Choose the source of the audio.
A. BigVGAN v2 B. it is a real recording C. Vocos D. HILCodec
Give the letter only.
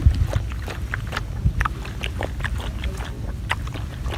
B